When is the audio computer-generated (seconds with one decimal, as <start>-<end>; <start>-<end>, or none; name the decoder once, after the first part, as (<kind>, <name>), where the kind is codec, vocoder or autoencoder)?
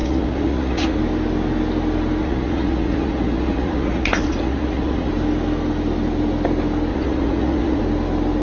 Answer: 0.0-1.0 (vocoder, Vocos); 2.2-5.1; 6.9-7.8